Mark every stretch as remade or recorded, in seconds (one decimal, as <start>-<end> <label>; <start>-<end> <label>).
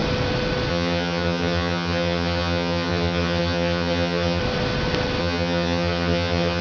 0.0-0.7 recorded; 0.7-4.4 remade; 4.4-5.2 recorded; 5.2-6.6 remade